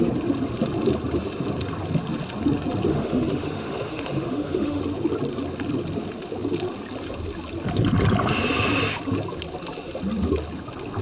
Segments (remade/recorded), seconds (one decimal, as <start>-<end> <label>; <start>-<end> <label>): 0.0-2.9 recorded; 2.9-4.8 remade; 4.8-11.0 recorded